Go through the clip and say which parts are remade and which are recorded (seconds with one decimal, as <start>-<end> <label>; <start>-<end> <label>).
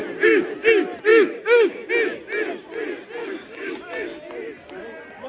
0.0-1.1 recorded; 1.1-1.9 remade; 1.9-3.2 recorded; 3.2-4.1 remade; 4.1-5.3 recorded